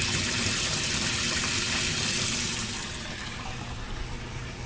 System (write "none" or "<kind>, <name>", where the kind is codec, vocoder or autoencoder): vocoder, BigVGAN v2